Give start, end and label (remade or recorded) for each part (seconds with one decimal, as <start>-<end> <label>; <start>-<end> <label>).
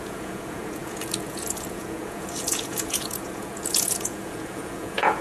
0.0-5.2 remade